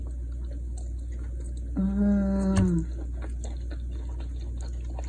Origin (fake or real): real